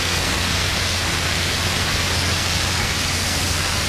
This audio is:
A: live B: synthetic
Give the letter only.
B